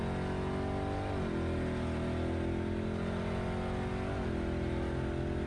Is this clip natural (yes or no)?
yes